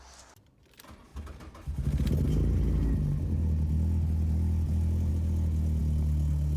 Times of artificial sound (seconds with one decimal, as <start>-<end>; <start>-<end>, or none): none